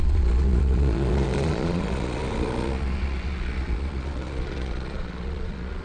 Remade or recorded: remade